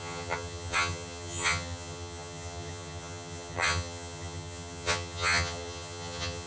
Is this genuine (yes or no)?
no